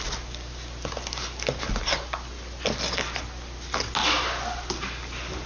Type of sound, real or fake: real